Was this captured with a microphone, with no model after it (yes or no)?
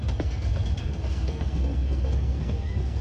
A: no